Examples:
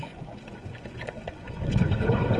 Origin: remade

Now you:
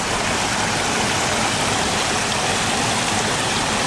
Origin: recorded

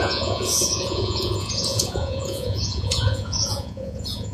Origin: remade